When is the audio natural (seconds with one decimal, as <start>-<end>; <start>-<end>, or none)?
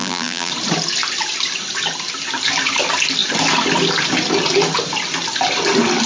0.5-6.1